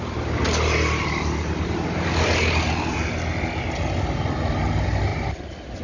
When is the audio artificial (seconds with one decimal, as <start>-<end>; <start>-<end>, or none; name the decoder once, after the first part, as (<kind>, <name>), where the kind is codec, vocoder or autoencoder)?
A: none